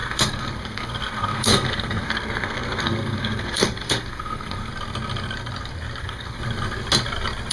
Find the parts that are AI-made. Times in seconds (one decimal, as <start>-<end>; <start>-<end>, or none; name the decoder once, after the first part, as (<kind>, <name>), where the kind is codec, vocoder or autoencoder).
0.0-4.7 (codec, SNAC); 6.0-6.4